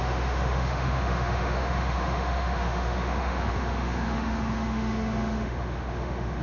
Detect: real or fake fake